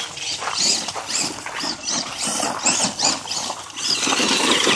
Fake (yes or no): no